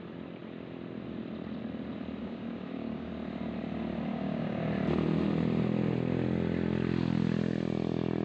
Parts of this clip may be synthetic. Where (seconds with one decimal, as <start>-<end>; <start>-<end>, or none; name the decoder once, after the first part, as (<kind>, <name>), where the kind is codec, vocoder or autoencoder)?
2.2-3.1 (codec, DAC); 4.1-4.7